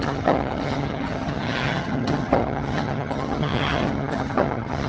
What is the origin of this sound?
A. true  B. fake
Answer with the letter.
B